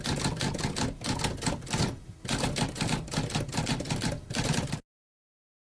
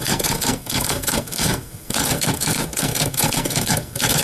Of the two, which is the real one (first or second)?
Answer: first